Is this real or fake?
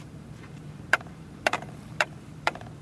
fake